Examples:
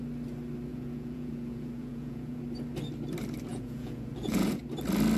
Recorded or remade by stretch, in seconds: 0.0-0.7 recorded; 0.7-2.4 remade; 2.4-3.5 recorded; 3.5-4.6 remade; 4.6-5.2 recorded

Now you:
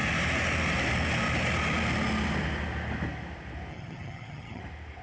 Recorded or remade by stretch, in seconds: 0.0-3.7 recorded; 3.7-4.6 remade; 4.6-5.0 recorded

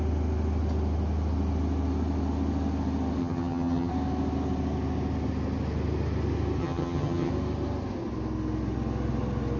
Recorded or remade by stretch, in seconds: 0.0-3.2 recorded; 3.2-3.9 remade; 3.9-6.6 recorded; 6.6-7.3 remade; 7.3-9.6 recorded